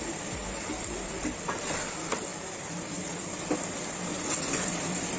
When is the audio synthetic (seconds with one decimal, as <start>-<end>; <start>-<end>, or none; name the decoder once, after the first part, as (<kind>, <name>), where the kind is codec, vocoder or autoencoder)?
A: none